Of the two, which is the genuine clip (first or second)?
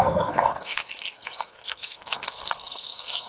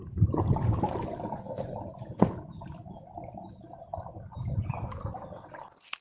second